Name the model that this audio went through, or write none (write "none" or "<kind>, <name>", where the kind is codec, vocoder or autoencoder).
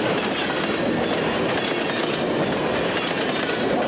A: none